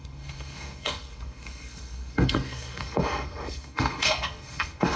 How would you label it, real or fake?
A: fake